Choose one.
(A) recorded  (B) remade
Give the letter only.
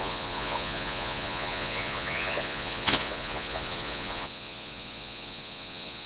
B